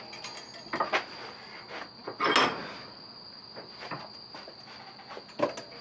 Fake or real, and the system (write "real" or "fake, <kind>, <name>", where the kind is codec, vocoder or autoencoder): real